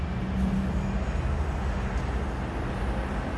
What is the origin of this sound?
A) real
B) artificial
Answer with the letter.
A